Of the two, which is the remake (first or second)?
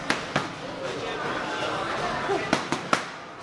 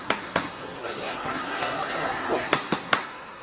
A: second